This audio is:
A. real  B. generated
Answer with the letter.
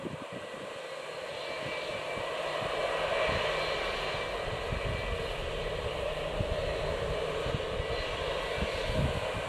A